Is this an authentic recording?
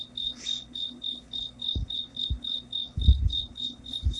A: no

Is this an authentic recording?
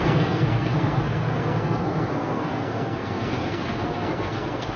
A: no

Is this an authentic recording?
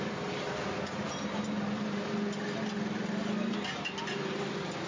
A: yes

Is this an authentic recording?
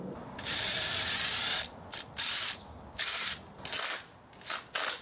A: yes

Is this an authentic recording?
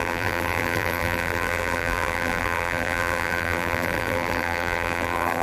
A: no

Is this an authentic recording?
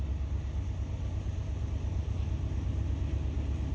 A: yes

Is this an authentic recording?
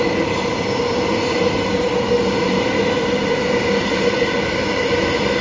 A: yes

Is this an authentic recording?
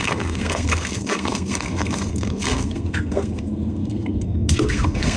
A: no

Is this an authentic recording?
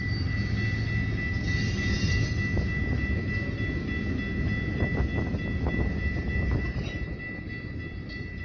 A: yes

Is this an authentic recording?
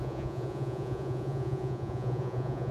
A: no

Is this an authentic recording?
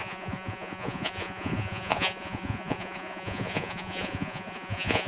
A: no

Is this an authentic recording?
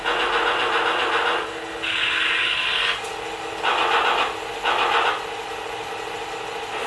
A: yes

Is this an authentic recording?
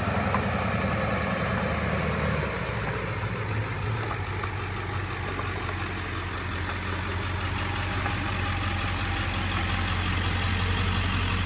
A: yes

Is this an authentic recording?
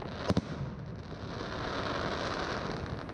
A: yes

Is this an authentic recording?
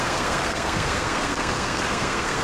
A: no